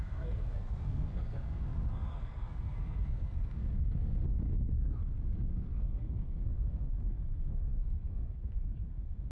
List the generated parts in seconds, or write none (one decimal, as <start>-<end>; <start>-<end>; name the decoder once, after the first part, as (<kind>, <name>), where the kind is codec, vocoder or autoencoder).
0.0-4.2 (codec, SNAC); 4.7-9.3